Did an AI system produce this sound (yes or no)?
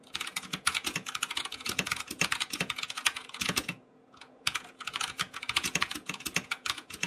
yes